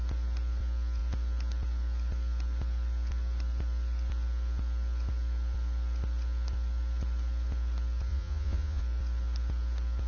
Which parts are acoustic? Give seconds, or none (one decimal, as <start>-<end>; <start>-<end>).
0.0-8.1; 8.8-10.1